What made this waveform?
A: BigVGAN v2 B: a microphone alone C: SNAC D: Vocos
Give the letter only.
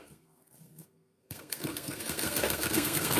C